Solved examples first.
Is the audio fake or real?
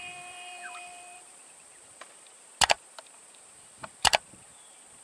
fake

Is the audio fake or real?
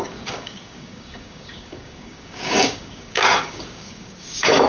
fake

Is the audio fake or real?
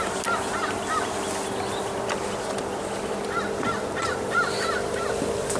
real